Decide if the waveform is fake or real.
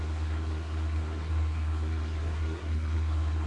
fake